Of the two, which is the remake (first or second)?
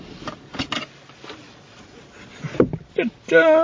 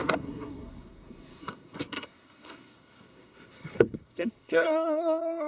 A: second